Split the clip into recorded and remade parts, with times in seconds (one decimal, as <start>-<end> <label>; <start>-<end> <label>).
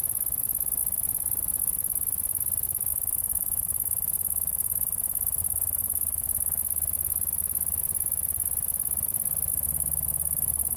0.0-2.9 recorded; 2.9-6.6 remade; 6.6-9.5 recorded; 9.5-10.8 remade